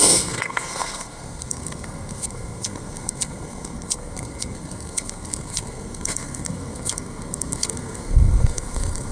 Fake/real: fake